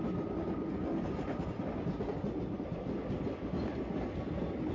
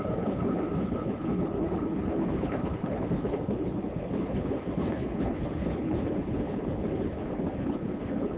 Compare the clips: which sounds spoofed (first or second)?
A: second